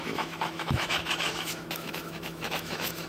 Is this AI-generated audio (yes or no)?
yes